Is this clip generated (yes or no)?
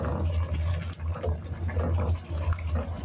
no